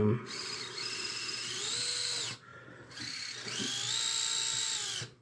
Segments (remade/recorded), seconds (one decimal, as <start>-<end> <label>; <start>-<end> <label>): 0.0-5.2 recorded